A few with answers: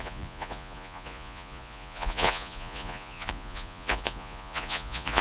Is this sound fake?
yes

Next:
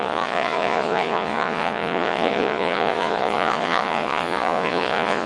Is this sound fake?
yes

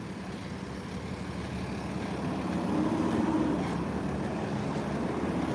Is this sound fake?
no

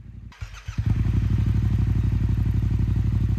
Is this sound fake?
no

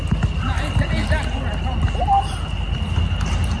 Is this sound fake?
no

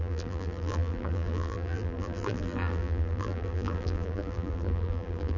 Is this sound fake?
yes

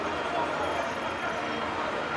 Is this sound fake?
no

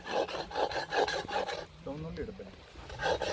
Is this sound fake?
no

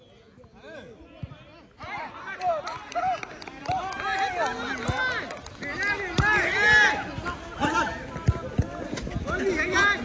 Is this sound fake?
no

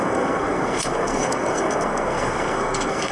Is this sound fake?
yes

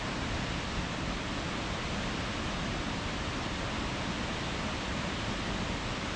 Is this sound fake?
no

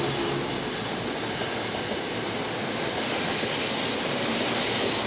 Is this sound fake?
no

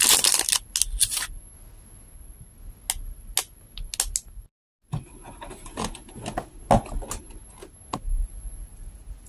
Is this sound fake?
no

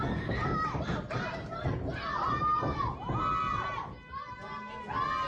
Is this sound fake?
no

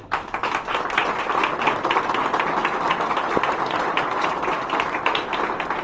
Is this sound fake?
no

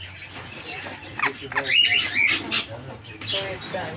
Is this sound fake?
no